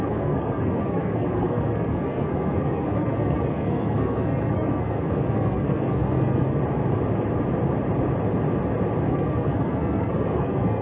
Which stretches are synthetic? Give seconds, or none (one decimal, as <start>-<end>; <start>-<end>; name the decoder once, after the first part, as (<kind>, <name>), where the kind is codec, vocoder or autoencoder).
0.0-6.6 (codec, SNAC); 9.1-10.8